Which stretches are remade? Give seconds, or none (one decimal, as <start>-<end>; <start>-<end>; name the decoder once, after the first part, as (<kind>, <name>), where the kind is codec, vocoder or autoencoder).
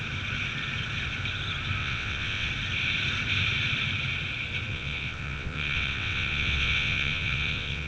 1.8-2.5 (vocoder, WaveNeXt); 4.7-7.9